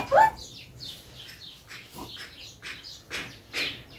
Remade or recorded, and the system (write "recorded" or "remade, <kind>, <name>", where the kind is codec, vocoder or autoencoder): recorded